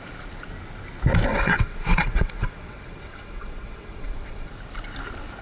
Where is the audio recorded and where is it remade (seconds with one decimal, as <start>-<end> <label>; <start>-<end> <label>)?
0.0-1.3 recorded; 1.3-4.5 remade; 4.5-5.4 recorded